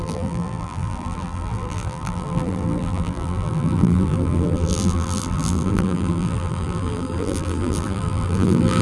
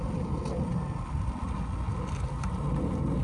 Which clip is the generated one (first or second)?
first